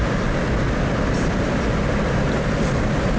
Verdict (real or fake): real